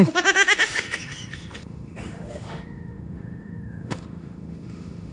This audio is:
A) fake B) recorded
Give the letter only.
A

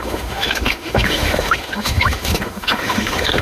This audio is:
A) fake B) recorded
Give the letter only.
A